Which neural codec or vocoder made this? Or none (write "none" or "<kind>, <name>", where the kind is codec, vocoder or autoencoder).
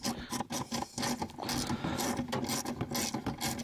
none